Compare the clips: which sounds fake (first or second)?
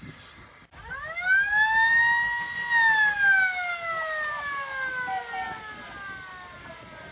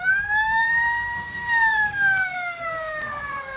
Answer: second